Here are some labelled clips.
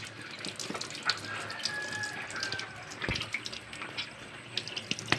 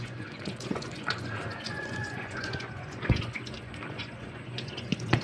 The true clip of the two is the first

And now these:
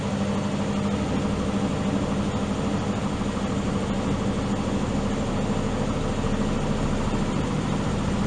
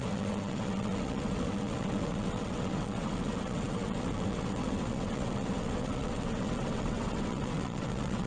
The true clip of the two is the first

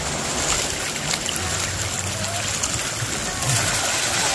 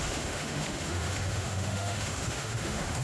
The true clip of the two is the first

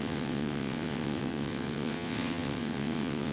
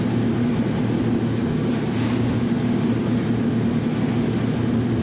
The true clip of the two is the second